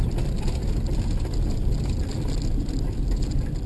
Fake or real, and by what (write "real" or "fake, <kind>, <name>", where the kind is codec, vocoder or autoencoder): real